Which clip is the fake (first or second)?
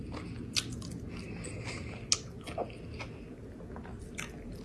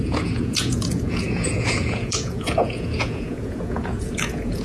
second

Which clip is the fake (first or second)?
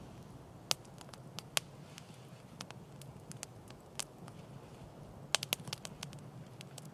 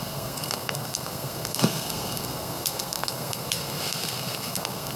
second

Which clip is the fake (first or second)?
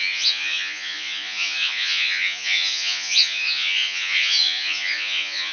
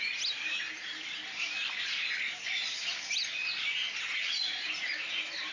first